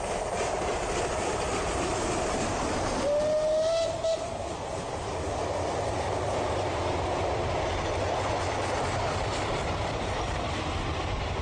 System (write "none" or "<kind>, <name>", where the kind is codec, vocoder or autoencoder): none